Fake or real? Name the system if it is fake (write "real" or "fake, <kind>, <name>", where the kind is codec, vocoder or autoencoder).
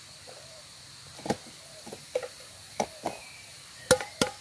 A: real